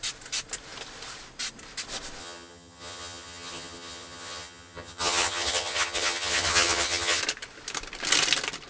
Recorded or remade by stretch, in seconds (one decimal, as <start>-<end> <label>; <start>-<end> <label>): 0.0-2.2 recorded; 2.2-7.2 remade; 7.2-8.7 recorded